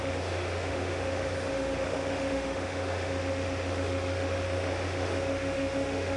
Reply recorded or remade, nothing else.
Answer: remade